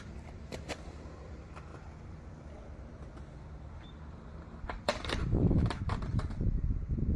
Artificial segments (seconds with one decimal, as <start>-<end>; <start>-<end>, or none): 0.0-7.2